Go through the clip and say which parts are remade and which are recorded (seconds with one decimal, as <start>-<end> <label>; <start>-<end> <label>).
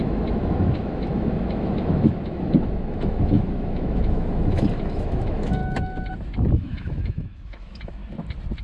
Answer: 0.0-5.6 remade; 5.6-6.5 recorded; 6.5-8.0 remade; 8.0-8.6 recorded